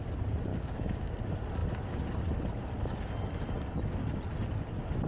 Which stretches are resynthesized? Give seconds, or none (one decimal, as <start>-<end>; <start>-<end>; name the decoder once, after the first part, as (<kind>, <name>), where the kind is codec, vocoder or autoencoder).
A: 0.5-1.2 (codec, DAC)